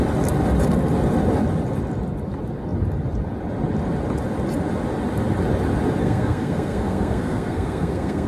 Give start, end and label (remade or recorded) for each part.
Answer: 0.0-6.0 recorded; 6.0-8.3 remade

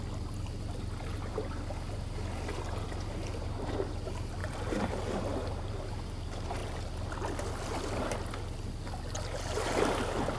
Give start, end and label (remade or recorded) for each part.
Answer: 0.0-4.4 recorded; 4.4-5.0 remade; 5.0-10.4 recorded

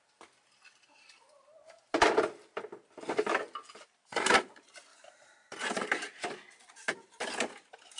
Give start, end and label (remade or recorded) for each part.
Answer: 0.0-4.9 recorded; 4.9-5.9 remade; 5.9-8.0 recorded

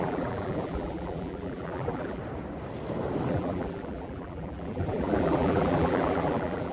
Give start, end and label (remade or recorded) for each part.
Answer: 0.0-2.2 remade; 2.2-3.3 recorded; 3.3-6.7 remade

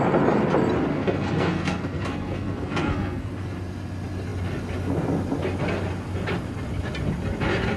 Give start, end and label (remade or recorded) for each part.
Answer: 0.0-0.9 recorded; 0.9-3.3 remade; 3.3-7.8 recorded

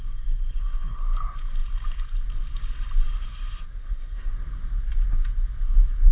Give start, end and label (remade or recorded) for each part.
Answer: 0.0-3.8 recorded; 3.8-4.3 remade; 4.3-6.1 recorded

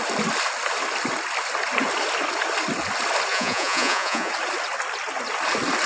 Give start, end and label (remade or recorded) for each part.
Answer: 0.0-3.3 recorded; 3.3-4.3 remade; 4.3-5.9 recorded